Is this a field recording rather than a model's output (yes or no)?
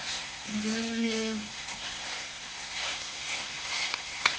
no